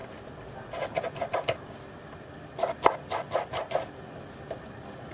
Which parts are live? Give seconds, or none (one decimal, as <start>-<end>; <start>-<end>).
0.0-5.1